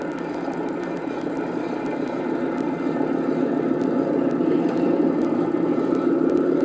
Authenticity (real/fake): real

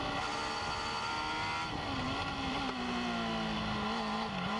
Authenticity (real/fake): real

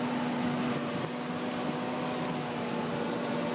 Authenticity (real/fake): real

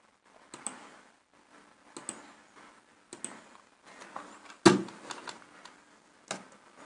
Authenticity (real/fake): real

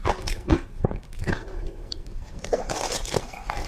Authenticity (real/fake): fake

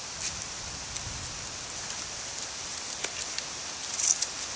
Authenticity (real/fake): real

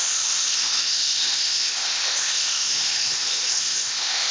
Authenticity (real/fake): fake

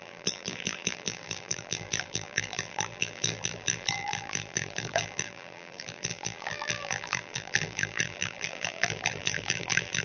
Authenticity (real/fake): fake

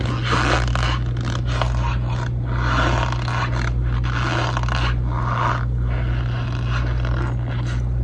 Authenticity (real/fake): real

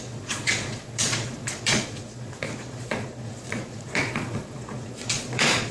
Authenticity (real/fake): fake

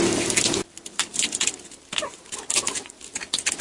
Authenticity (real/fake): real